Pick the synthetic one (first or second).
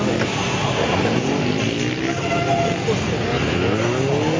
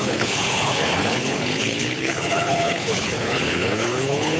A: second